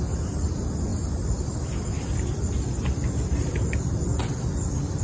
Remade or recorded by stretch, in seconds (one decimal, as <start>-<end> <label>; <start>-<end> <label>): 0.0-0.9 recorded; 0.9-3.9 remade; 3.9-5.0 recorded

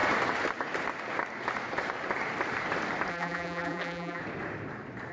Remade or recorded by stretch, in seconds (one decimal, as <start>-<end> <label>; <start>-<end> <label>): 0.0-3.1 recorded; 3.1-4.2 remade; 4.2-5.1 recorded